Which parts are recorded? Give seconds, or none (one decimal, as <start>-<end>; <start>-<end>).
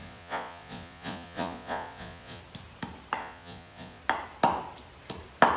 2.4-3.2; 4.0-5.6